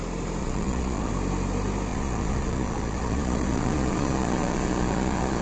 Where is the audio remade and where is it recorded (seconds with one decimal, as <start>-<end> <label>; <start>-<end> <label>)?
0.0-0.4 recorded; 0.4-1.1 remade; 1.1-1.9 recorded; 1.9-5.4 remade